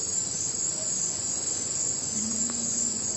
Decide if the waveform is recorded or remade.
remade